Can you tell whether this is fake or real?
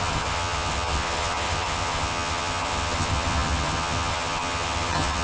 fake